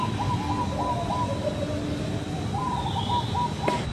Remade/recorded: recorded